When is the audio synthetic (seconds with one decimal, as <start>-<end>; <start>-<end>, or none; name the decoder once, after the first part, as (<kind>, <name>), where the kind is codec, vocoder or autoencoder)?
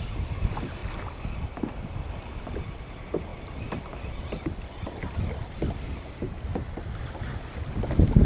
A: 0.0-0.8 (vocoder, BigVGAN v2); 1.6-8.2